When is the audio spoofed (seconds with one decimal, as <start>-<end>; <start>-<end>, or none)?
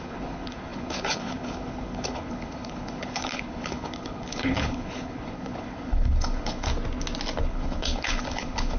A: 0.0-6.7; 7.4-8.8